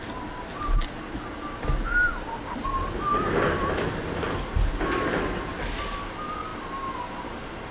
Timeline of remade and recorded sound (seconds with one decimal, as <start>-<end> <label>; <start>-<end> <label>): 0.0-7.7 recorded